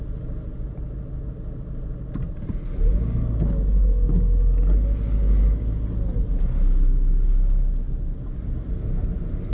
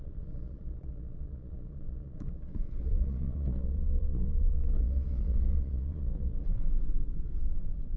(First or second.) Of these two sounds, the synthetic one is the second